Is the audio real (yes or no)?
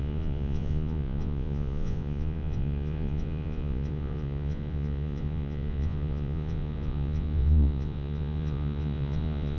no